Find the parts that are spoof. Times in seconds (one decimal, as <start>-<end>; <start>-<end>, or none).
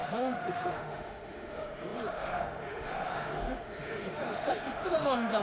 0.0-5.4